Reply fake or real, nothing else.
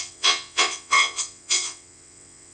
fake